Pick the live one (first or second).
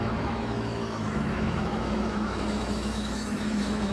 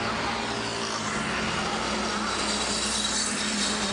second